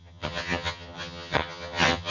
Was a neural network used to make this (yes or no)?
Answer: yes